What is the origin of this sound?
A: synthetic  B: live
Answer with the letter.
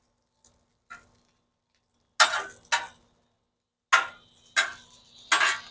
B